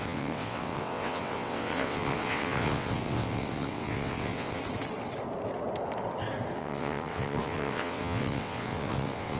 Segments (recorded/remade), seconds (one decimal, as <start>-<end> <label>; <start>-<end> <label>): 0.0-4.6 remade; 4.6-6.6 recorded; 6.6-9.4 remade